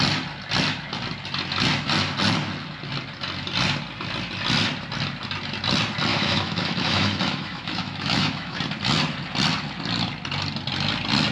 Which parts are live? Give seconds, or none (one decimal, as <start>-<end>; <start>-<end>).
0.0-6.1; 8.6-11.3